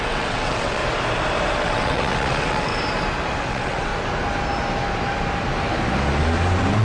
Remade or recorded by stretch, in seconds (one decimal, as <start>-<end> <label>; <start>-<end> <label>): 0.0-0.8 remade; 0.8-1.6 recorded; 1.6-2.7 remade; 2.7-3.5 recorded; 3.5-3.9 remade; 3.9-6.8 recorded